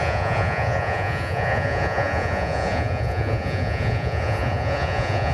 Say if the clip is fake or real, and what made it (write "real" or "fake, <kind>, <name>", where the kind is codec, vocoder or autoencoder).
fake, vocoder, Vocos